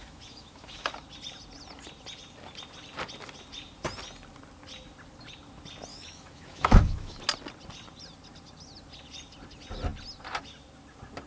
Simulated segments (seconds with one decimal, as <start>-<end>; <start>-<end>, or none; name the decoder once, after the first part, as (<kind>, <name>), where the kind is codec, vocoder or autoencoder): 0.0-0.9 (autoencoder, DAC-VAE); 5.9-7.2